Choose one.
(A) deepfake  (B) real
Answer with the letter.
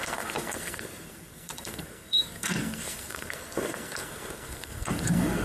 A